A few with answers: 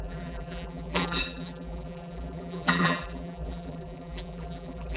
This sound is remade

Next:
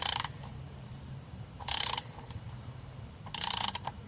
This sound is remade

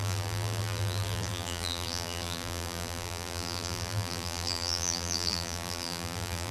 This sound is remade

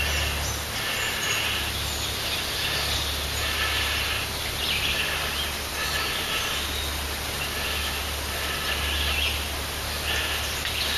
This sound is recorded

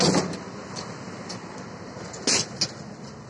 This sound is recorded